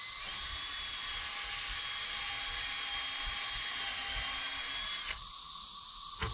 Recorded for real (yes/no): yes